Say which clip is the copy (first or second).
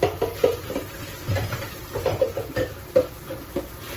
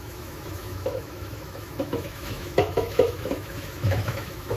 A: second